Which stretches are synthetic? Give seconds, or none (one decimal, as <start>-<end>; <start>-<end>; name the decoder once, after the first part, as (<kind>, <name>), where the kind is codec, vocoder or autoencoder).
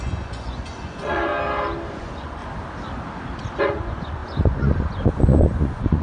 0.0-1.3 (vocoder, Vocos); 1.9-2.4; 3.6-6.0